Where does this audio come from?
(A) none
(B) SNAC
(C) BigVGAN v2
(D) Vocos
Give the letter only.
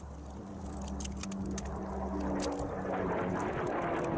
A